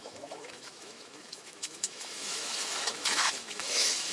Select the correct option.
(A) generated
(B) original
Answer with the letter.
A